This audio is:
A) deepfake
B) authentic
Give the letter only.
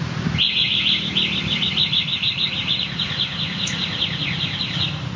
B